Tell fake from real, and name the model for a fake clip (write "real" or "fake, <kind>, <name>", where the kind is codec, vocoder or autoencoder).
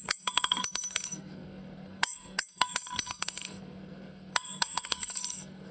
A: fake, codec, SNAC